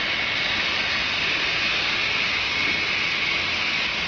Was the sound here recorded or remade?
recorded